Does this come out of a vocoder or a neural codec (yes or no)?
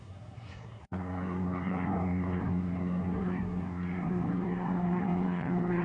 yes